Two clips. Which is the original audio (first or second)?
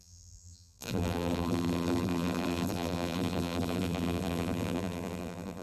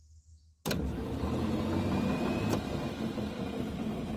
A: second